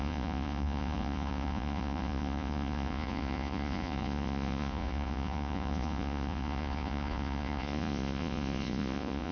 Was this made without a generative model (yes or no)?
no